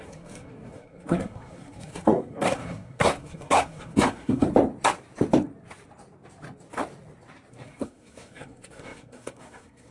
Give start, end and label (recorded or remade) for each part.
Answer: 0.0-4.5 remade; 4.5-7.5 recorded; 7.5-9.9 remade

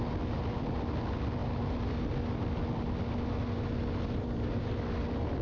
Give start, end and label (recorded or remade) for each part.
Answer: 0.0-5.4 recorded

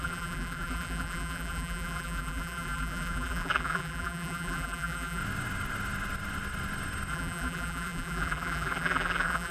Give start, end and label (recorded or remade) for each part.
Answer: 0.0-5.2 remade; 5.2-7.1 recorded; 7.1-9.5 remade

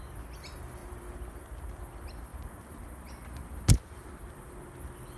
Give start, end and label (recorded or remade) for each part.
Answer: 0.0-5.2 recorded

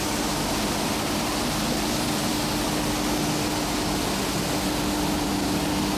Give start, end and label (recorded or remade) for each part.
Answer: 0.0-6.0 recorded

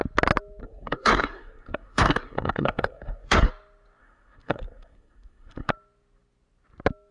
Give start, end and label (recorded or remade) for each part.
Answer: 0.0-0.6 recorded; 0.6-3.5 remade; 3.5-4.0 recorded; 4.0-5.7 remade; 5.7-7.1 recorded

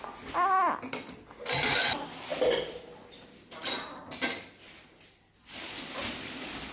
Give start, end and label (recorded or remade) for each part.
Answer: 0.0-6.7 recorded